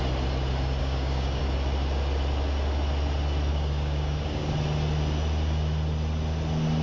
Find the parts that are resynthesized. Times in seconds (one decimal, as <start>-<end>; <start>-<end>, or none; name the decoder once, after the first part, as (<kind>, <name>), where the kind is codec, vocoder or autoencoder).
0.8-1.4 (codec, DAC); 3.5-4.5